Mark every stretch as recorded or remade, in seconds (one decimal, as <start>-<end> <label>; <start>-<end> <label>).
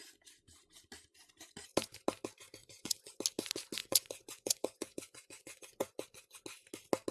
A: 0.0-2.6 recorded; 2.6-3.2 remade; 3.2-3.8 recorded; 3.8-6.4 remade; 6.4-7.1 recorded